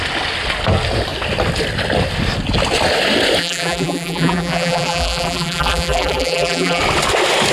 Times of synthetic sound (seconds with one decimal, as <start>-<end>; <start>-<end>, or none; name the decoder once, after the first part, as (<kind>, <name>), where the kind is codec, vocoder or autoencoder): 3.4-6.8 (vocoder, BigVGAN v2)